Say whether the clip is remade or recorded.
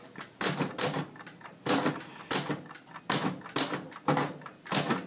recorded